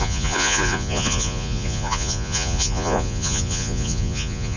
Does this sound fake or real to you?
fake